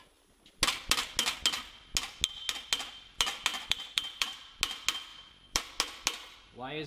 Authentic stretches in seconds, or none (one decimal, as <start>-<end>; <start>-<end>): 0.0-3.5; 4.5-5.1; 5.6-6.9